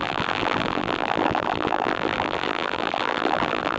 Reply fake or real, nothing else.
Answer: fake